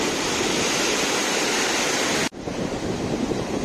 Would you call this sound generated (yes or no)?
no